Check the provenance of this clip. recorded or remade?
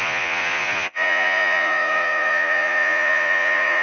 remade